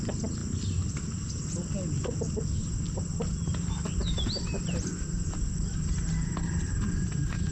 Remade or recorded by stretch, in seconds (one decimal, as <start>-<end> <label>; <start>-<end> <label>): 0.0-7.5 recorded